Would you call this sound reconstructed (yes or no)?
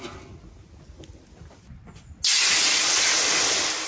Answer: no